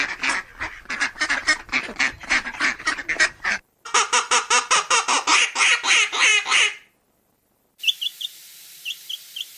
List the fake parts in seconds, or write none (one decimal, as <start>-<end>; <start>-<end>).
1.4-5.4